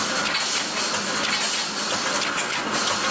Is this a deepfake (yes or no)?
no